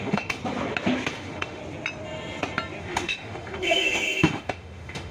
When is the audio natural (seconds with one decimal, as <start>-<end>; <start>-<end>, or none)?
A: 0.4-1.1; 1.6-2.8